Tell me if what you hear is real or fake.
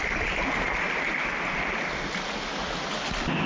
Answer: real